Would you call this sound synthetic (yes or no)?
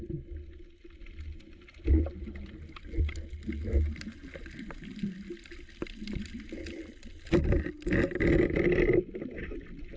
no